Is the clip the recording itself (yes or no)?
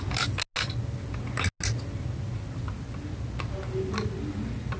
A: yes